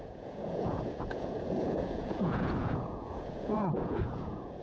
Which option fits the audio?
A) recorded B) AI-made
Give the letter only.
B